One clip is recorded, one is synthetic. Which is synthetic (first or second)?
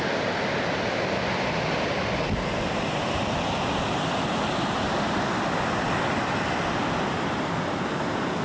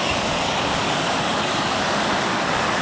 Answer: second